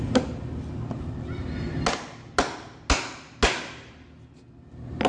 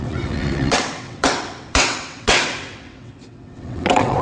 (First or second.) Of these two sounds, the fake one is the second